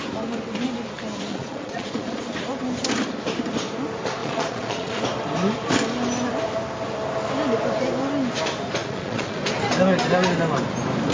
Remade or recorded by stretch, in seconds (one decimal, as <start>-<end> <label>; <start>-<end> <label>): 0.0-1.3 recorded; 1.3-2.2 remade; 2.2-4.2 recorded; 4.2-5.0 remade; 5.0-8.8 recorded; 8.8-9.4 remade; 9.4-11.1 recorded